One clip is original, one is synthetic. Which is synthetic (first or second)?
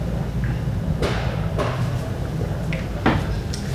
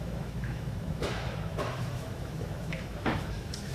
second